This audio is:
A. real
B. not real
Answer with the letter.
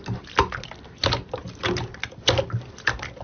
A